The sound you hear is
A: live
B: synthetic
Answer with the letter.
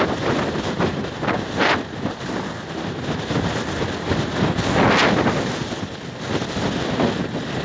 A